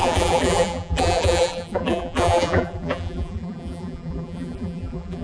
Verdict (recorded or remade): remade